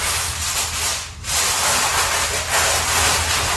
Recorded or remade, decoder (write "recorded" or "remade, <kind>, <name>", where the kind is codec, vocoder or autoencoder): recorded